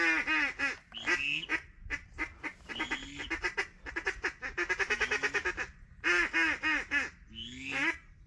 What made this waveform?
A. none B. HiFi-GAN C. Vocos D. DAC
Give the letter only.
A